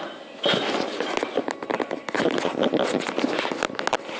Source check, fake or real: real